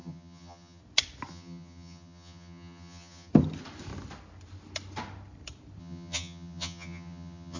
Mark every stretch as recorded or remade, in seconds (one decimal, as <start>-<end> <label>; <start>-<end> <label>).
0.0-0.8 remade; 0.8-1.3 recorded; 1.3-3.3 remade; 3.3-5.8 recorded; 5.8-7.6 remade